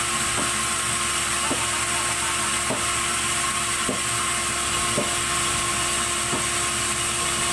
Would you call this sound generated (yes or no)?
no